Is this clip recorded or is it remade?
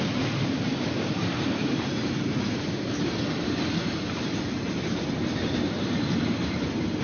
remade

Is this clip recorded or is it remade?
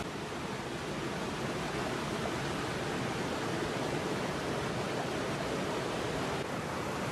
recorded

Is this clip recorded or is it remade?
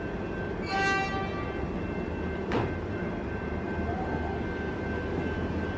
recorded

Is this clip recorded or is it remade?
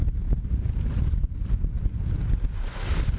recorded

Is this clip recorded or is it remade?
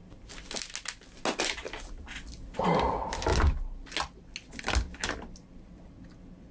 recorded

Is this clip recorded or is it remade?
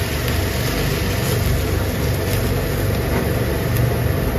recorded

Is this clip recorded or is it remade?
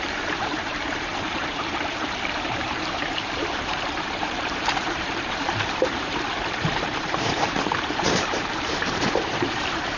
remade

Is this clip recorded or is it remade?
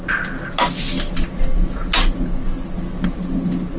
recorded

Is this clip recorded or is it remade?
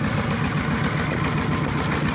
recorded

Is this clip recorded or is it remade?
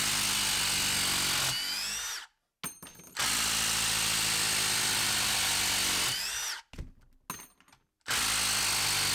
recorded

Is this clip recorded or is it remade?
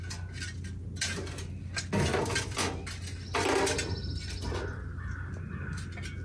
recorded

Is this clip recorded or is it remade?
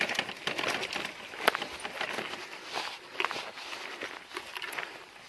recorded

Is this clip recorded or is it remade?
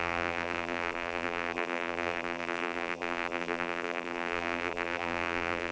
remade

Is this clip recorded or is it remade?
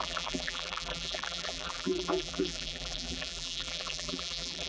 remade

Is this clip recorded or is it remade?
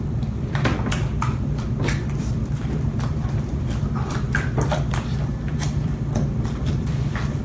remade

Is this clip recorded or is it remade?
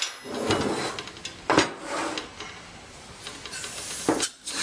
recorded